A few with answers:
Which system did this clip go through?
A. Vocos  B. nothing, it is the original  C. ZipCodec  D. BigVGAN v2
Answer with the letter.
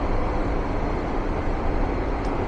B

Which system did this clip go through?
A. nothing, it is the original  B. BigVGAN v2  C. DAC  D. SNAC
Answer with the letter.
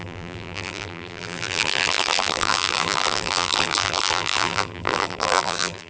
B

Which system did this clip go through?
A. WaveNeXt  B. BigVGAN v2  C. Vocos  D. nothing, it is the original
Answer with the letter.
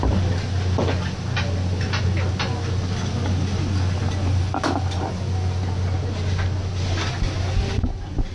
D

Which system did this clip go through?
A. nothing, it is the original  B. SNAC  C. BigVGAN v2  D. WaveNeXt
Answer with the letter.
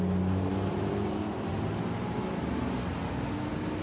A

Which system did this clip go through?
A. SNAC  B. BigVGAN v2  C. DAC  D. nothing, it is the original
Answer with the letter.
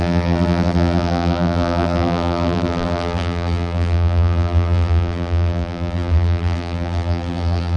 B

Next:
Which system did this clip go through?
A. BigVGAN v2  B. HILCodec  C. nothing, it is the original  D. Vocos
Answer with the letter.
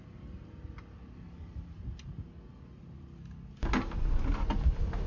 C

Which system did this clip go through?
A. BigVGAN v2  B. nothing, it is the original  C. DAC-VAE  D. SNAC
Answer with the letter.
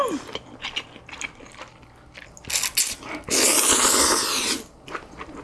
B